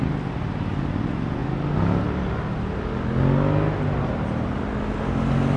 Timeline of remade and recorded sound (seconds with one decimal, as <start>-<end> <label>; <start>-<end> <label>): 0.0-5.6 recorded